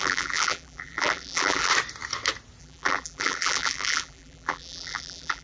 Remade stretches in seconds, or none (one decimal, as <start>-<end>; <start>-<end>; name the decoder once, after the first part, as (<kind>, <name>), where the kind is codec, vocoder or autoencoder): 0.0-1.7 (vocoder, BigVGAN v2); 2.6-5.4